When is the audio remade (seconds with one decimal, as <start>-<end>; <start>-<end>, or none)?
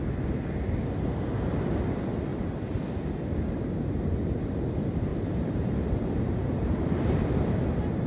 2.3-3.3; 5.1-6.8